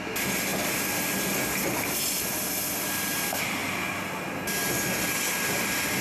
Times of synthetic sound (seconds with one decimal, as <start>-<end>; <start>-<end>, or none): none